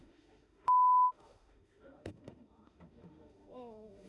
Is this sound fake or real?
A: fake